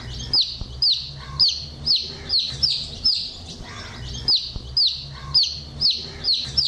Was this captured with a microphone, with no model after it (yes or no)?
yes